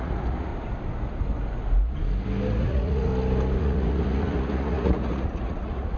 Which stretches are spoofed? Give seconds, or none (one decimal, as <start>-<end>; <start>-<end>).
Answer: 0.0-0.5; 2.6-3.1; 3.6-6.0